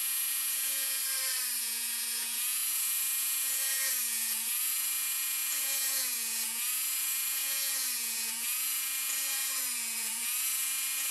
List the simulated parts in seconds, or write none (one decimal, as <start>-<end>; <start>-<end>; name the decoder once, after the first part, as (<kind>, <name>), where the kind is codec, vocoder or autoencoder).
0.0-1.0 (vocoder, Vocos); 1.6-11.1